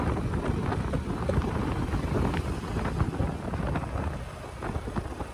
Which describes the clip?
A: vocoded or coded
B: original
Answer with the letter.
B